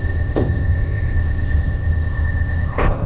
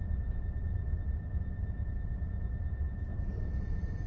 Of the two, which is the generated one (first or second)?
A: first